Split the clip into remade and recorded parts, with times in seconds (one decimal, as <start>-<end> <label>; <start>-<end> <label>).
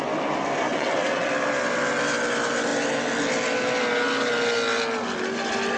0.0-0.7 recorded; 0.7-1.3 remade; 1.3-5.8 recorded